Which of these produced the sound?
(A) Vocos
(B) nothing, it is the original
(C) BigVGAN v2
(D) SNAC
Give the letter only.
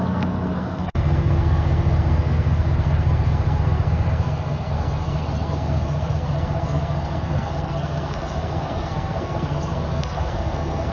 D